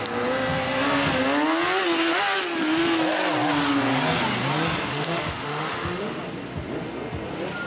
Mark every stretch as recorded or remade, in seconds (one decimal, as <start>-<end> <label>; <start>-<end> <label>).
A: 0.0-4.9 recorded; 4.9-6.1 remade; 6.1-7.7 recorded